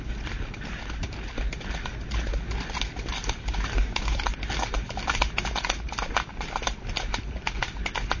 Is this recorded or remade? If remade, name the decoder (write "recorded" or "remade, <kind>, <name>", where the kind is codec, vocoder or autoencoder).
recorded